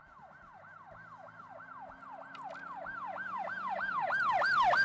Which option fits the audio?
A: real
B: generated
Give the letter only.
A